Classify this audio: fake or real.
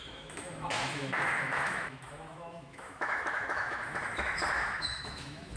fake